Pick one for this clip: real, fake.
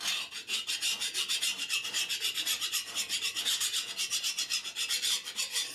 real